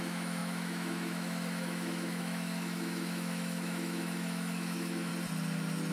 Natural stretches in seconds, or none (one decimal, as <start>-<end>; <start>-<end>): 5.1-5.9